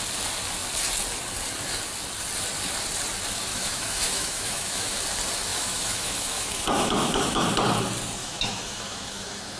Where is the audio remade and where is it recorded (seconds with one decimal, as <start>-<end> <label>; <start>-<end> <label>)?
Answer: 0.0-3.5 recorded; 3.5-4.9 remade; 4.9-5.5 recorded; 5.5-7.4 remade; 7.4-8.2 recorded; 8.2-9.6 remade